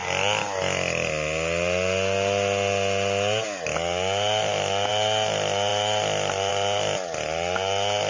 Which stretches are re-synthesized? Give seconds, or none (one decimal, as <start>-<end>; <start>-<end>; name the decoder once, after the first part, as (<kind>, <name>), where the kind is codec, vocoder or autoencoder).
none